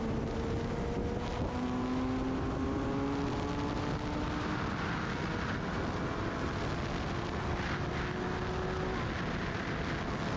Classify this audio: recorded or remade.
recorded